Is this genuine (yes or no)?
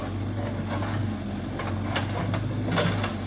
yes